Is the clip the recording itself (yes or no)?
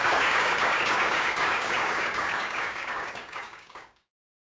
no